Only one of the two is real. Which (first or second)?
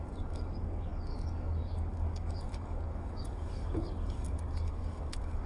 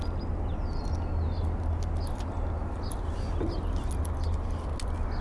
second